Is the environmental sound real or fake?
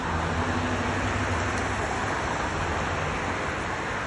real